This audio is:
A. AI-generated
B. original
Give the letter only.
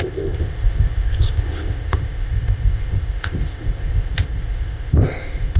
A